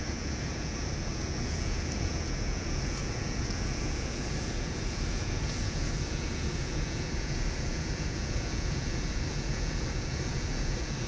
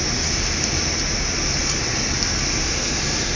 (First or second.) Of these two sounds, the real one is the second